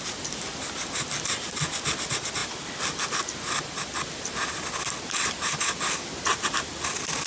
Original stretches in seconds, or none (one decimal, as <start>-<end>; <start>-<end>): 0.0-7.3